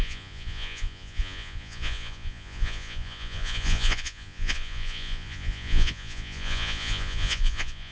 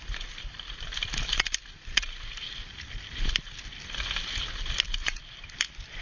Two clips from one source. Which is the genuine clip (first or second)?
second